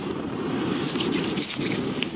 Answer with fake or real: fake